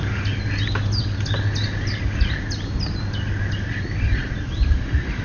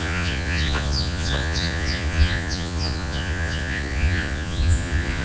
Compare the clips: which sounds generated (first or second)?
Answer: second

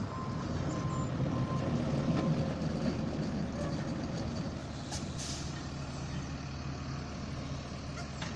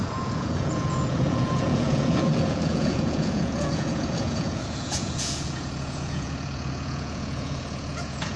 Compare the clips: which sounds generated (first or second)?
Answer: second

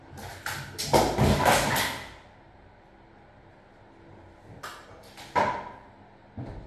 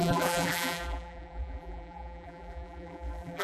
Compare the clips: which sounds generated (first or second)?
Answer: second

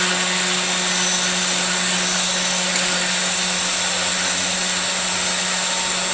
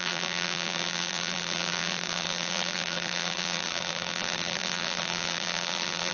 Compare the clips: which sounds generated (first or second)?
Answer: second